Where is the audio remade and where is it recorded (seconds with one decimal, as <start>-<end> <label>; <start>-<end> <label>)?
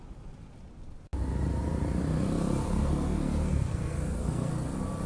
0.0-2.6 recorded; 2.6-4.5 remade; 4.5-5.1 recorded